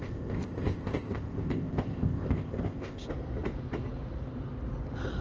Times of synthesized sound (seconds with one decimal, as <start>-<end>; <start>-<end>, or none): 0.0-3.1